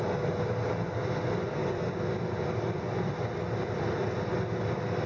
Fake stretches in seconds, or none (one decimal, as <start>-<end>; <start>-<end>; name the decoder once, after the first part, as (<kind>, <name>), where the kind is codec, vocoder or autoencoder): none